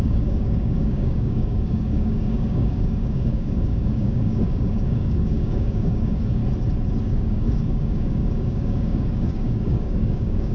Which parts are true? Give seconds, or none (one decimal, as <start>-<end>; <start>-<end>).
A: 6.4-7.0